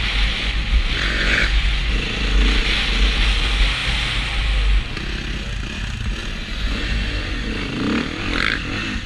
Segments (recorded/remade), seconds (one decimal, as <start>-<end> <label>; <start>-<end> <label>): 0.0-0.4 recorded; 0.4-1.9 remade; 1.9-6.2 recorded; 6.2-7.5 remade; 7.5-9.1 recorded